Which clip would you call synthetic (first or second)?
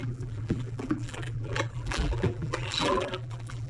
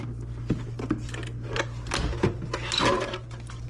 first